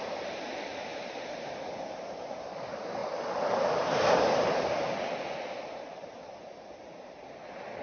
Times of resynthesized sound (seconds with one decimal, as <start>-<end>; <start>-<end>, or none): 0.0-3.0; 3.5-4.9; 5.8-7.8